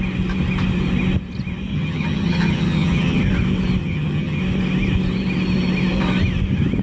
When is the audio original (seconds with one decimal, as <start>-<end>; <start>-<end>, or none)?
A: 0.0-1.7; 3.2-3.8; 4.4-6.8